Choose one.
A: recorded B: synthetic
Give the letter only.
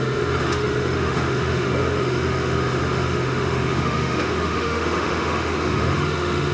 B